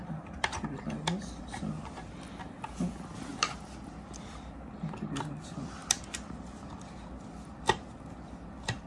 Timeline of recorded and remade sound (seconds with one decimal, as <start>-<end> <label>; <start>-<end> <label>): 0.0-8.9 recorded